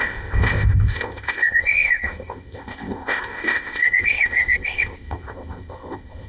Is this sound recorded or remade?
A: remade